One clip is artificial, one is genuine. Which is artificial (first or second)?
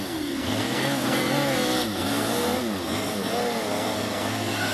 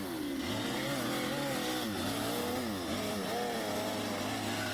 first